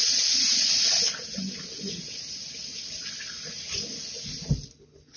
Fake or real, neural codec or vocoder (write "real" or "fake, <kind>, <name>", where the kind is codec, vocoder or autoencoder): real